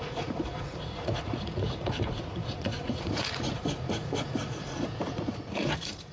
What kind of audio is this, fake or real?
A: fake